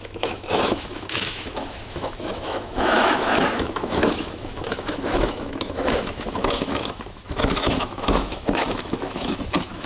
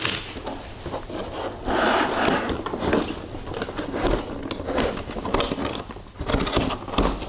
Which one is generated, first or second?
first